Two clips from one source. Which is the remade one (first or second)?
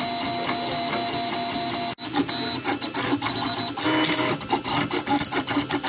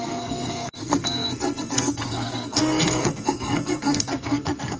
second